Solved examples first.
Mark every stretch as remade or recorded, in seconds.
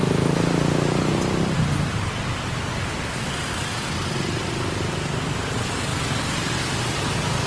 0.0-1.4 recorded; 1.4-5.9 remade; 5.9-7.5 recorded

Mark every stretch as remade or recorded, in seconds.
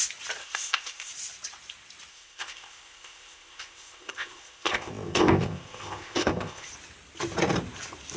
0.0-0.4 recorded; 0.4-1.1 remade; 1.1-2.1 recorded; 2.1-6.7 remade; 6.7-8.2 recorded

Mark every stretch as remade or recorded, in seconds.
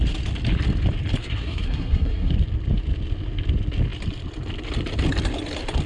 0.0-1.2 recorded; 1.2-2.3 remade; 2.3-5.9 recorded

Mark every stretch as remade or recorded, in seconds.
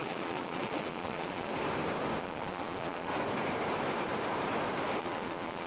0.0-1.5 remade; 1.5-2.2 recorded; 2.2-3.1 remade; 3.1-5.0 recorded; 5.0-5.7 remade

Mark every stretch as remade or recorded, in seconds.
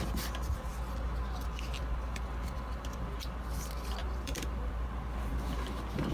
0.0-4.0 recorded; 4.0-4.7 remade; 4.7-6.1 recorded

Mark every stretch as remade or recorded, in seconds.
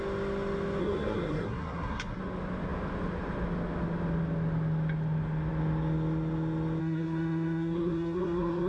0.0-0.8 recorded; 0.8-2.2 remade; 2.2-6.8 recorded; 6.8-8.7 remade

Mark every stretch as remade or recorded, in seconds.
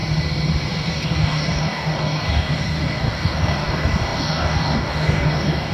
0.0-0.9 recorded; 0.9-5.7 remade